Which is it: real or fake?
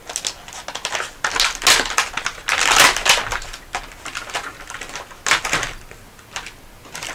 real